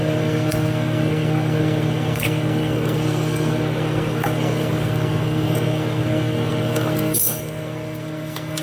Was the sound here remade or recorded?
remade